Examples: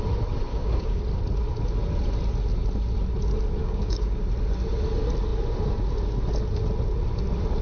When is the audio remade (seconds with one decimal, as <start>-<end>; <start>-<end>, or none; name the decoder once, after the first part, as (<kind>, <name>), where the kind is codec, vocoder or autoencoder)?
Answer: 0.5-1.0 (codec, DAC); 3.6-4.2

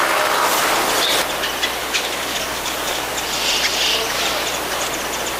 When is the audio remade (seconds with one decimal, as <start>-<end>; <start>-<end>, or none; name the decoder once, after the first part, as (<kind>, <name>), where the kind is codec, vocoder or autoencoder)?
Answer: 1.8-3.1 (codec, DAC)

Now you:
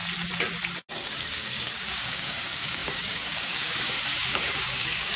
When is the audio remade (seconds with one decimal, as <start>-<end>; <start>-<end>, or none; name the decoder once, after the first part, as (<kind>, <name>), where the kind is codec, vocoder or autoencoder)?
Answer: 0.9-5.2 (codec, DAC)

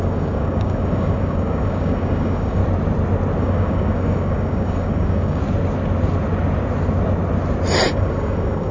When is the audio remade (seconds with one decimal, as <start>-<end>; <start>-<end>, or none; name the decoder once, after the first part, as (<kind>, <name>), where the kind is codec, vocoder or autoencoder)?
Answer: 0.0-2.6 (codec, DAC); 3.4-5.4; 7.9-8.7

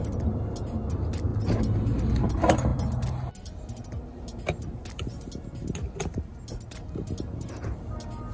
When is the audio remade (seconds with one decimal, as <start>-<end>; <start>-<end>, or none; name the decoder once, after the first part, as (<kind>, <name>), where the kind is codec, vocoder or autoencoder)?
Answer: none

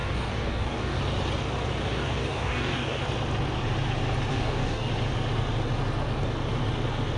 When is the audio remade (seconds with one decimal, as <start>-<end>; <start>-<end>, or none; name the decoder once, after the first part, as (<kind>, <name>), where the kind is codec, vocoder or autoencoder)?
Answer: 0.0-1.0 (codec, DAC); 1.8-3.0; 4.3-4.9

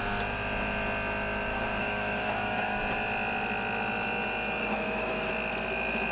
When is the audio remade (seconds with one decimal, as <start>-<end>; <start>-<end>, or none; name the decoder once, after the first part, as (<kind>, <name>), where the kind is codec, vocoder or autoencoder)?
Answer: 1.5-2.8 (codec, DAC); 4.6-5.3